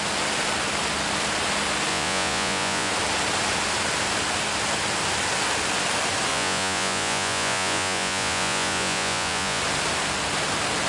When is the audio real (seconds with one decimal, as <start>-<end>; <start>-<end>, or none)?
0.0-1.9; 2.9-6.3; 9.6-10.9